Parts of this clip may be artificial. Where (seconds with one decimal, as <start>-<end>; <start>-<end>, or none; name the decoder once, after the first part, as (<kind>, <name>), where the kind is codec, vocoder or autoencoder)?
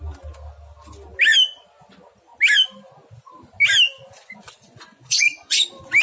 4.2-5.6 (vocoder, Vocos)